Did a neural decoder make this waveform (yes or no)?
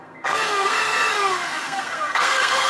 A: yes